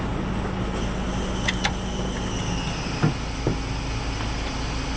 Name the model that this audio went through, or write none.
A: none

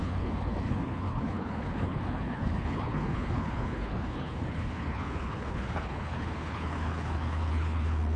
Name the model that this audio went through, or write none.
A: codec, HILCodec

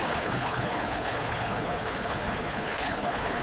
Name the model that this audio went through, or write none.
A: codec, HILCodec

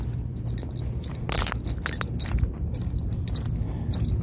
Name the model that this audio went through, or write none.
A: none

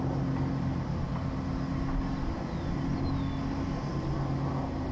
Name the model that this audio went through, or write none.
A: none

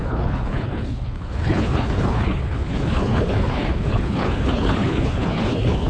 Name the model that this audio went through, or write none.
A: codec, HILCodec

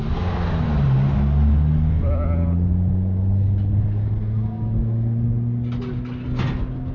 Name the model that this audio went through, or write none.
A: none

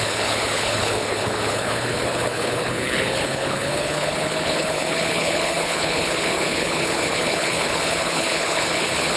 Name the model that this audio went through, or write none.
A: codec, HILCodec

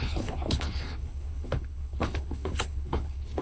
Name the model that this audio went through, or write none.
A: codec, HILCodec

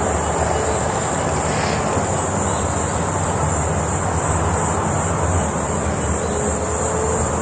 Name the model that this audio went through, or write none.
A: none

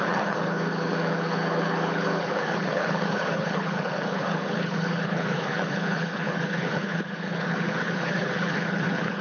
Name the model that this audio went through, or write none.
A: codec, HILCodec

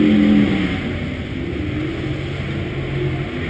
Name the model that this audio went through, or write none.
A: none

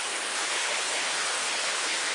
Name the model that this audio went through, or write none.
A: codec, HILCodec